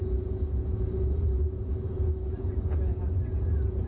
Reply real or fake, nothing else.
fake